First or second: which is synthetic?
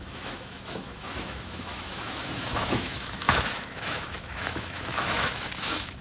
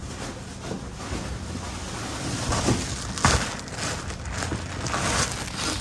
first